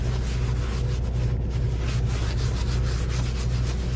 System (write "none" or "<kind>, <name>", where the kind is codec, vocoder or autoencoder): none